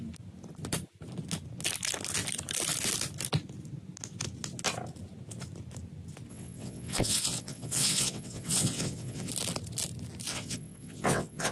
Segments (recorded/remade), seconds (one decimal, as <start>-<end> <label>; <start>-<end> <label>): 0.0-6.3 recorded; 6.3-9.3 remade; 9.3-10.3 recorded; 10.3-11.5 remade